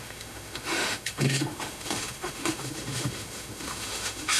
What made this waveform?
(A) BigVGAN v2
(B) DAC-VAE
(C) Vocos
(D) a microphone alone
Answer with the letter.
B